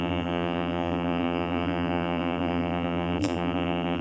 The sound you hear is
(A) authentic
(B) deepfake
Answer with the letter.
B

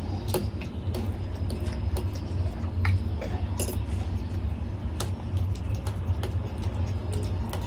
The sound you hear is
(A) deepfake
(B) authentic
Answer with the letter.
B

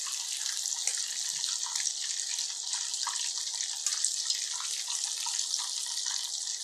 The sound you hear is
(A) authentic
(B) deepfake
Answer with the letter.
A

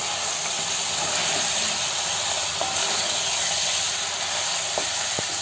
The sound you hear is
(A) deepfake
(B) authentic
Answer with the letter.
B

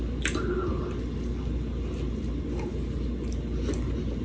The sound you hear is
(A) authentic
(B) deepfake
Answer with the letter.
A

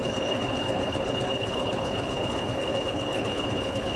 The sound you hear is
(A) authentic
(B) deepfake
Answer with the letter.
B